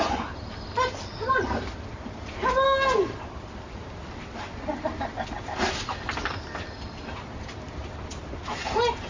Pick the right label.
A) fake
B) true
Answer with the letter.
B